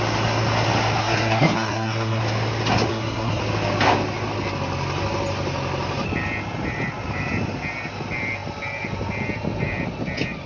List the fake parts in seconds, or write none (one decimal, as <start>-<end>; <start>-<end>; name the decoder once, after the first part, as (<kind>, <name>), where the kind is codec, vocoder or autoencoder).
1.0-2.2 (codec, SNAC); 2.9-3.4